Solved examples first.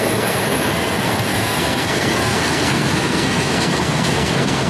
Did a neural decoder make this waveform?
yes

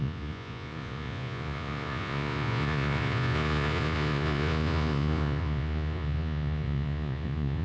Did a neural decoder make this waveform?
yes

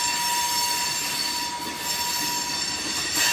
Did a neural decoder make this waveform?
no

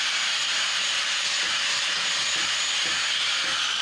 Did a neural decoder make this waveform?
no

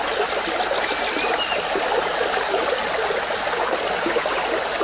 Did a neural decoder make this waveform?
no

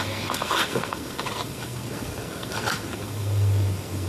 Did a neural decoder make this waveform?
yes